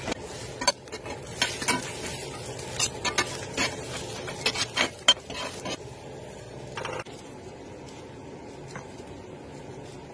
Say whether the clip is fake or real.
real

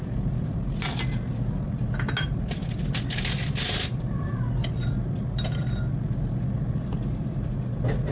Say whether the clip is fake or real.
real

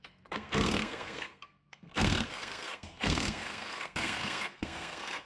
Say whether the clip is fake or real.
fake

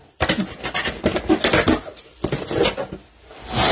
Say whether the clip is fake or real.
real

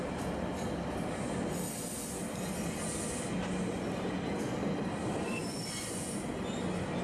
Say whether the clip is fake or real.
real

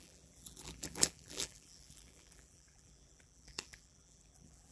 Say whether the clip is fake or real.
fake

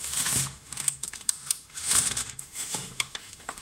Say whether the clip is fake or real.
fake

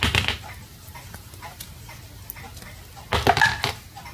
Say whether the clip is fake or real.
real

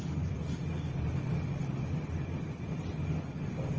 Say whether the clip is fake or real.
fake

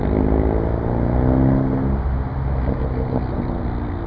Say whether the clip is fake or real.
real